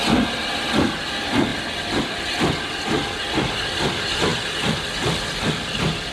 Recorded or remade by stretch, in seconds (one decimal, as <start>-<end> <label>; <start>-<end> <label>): 0.0-6.1 recorded

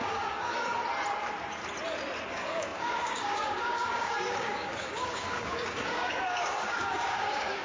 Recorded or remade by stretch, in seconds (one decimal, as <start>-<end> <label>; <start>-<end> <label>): 0.0-0.8 remade; 0.8-2.3 recorded; 2.3-7.6 remade

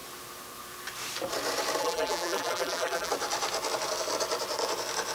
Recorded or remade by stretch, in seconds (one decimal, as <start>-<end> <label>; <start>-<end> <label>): 0.0-1.8 recorded; 1.8-3.1 remade; 3.1-5.1 recorded

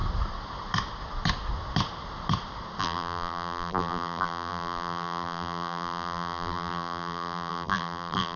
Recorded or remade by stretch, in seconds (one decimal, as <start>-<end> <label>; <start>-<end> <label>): 0.0-2.8 recorded; 2.8-8.4 remade

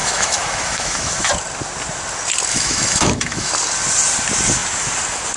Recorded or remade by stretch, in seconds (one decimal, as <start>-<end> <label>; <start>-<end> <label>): 0.0-1.3 remade; 1.3-2.5 recorded; 2.5-3.5 remade; 3.5-5.4 recorded

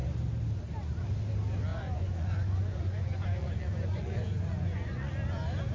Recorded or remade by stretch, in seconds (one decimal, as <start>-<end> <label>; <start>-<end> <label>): 0.0-1.7 recorded; 1.7-5.1 remade; 5.1-5.7 recorded

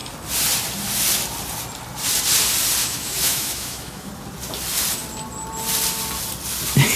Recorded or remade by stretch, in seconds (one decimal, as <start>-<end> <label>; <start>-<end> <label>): 0.0-2.8 recorded; 2.8-4.1 remade; 4.1-7.0 recorded

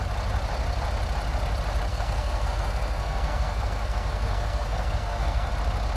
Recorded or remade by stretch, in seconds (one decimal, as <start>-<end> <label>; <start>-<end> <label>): 0.0-1.9 recorded; 1.9-5.5 remade; 5.5-6.0 recorded